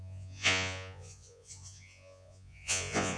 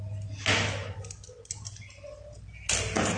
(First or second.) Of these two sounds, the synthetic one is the first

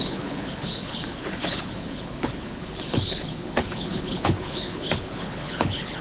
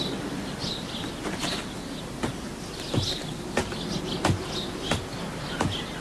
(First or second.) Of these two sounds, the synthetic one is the first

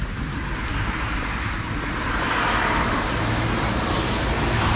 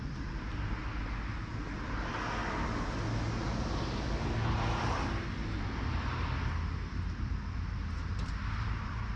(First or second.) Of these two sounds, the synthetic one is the first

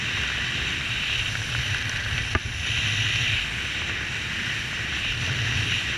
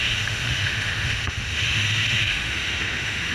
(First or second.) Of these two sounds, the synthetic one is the second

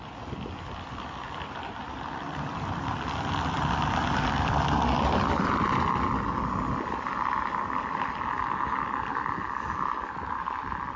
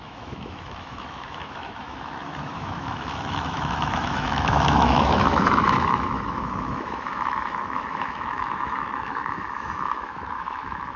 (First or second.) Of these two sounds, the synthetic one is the second